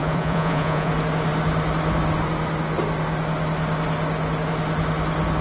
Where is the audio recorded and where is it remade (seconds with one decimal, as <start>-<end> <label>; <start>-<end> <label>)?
0.0-0.9 remade; 0.9-5.4 recorded